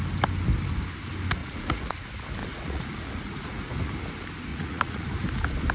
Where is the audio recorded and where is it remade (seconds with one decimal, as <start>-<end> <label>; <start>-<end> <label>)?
0.0-1.4 recorded; 1.4-1.9 remade; 1.9-2.4 recorded; 2.4-3.7 remade; 3.7-4.5 recorded; 4.5-5.0 remade; 5.0-5.7 recorded